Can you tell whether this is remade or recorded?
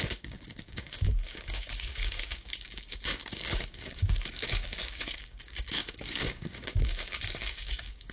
remade